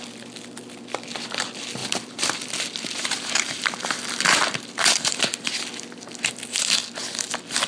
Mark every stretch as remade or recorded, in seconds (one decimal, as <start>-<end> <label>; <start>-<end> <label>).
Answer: 0.0-1.8 recorded; 1.8-5.2 remade; 5.2-7.7 recorded